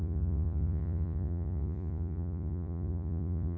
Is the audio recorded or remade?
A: remade